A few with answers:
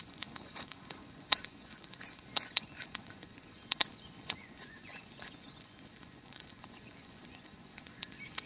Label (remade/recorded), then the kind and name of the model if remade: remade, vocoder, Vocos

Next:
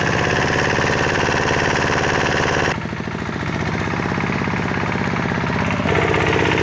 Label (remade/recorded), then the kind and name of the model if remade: recorded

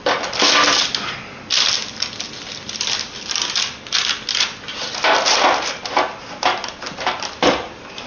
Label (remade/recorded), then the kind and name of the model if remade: recorded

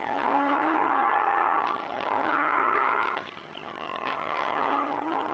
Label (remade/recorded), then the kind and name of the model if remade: remade, vocoder, HiFi-GAN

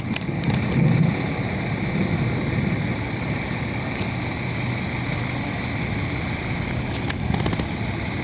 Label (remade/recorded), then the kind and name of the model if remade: recorded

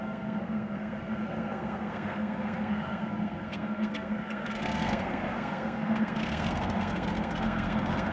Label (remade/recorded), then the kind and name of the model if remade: remade, codec, SNAC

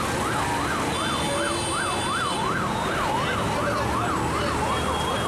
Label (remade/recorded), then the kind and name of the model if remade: recorded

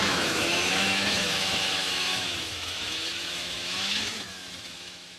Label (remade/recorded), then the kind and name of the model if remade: remade, autoencoder, DAC-VAE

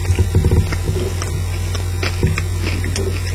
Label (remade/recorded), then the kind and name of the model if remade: recorded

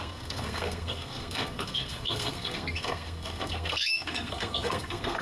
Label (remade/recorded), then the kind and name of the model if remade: remade, codec, SNAC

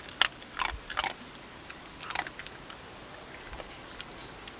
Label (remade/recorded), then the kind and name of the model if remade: recorded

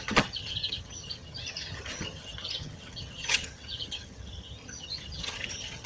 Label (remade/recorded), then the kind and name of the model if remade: remade, vocoder, HiFi-GAN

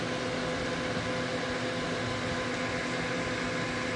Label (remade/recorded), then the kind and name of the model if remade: recorded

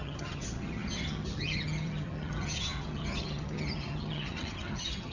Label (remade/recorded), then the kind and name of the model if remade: remade, vocoder, HiFi-GAN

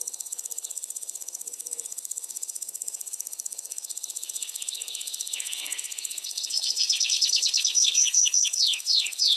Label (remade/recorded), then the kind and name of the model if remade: remade, codec, SNAC